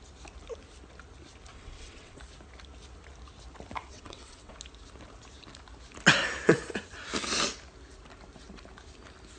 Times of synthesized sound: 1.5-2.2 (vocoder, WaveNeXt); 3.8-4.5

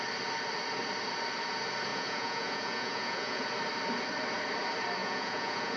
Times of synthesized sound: 1.9-3.5 (vocoder, Vocos); 5.0-5.8

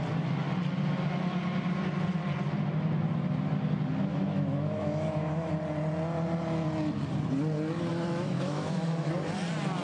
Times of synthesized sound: 4.1-5.5 (autoencoder, DAC-VAE); 7.9-9.1

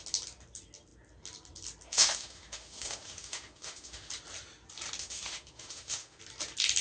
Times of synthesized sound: 1.9-4.1 (autoencoder, DAC-VAE); 5.0-6.2